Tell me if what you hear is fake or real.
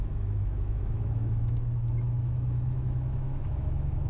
fake